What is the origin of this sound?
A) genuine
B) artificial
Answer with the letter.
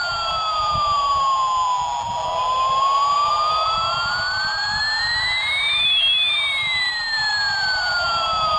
A